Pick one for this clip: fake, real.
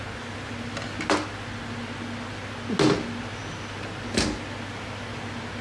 real